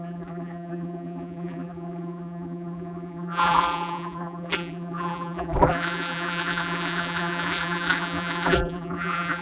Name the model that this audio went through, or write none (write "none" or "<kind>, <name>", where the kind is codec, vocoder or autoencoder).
vocoder, BigVGAN v2